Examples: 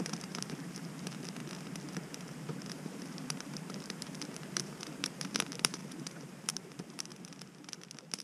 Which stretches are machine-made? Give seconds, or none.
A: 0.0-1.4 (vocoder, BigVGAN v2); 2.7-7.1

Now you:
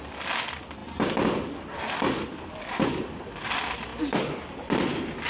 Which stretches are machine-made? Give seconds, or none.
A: none